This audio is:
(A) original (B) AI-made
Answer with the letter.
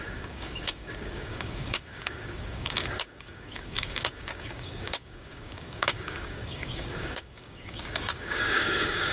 B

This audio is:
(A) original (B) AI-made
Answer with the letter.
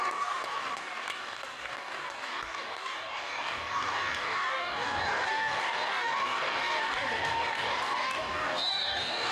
B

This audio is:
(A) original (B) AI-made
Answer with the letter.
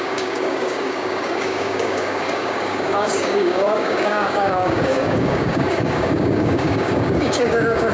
B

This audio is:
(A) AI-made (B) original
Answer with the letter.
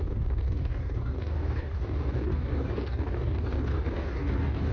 A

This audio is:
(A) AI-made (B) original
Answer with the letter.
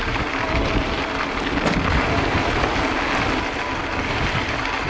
B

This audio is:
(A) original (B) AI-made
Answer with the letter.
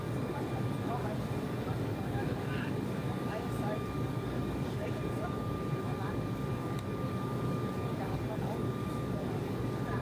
B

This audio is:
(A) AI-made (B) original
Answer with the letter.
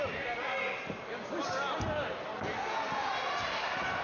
B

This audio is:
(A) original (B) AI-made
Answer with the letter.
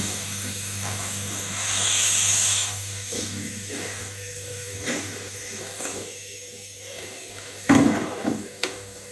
B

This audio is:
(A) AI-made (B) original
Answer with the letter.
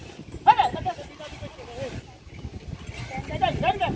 B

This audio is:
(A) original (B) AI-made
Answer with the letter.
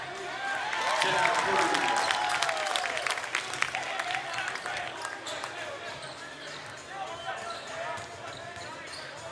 A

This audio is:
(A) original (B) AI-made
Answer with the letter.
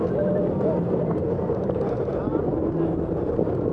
A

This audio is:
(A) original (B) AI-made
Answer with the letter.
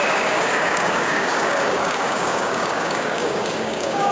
B